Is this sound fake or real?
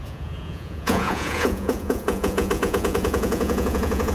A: fake